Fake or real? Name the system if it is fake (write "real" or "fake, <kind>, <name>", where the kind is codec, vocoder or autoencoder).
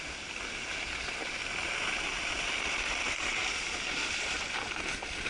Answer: real